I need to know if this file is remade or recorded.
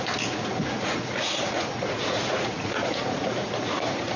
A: remade